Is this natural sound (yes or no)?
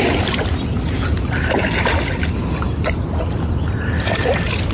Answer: yes